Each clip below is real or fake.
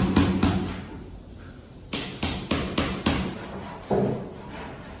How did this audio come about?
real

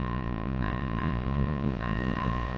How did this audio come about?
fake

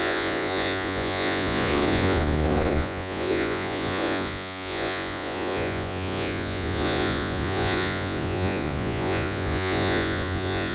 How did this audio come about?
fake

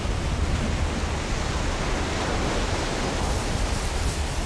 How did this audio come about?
real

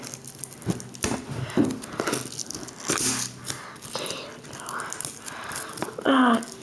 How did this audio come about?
real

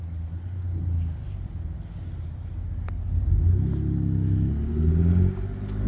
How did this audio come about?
real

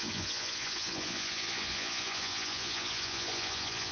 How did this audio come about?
fake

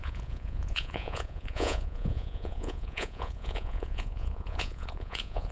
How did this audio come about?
fake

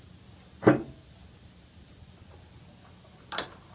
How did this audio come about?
real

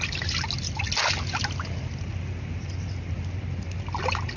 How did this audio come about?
real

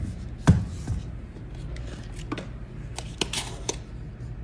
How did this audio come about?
real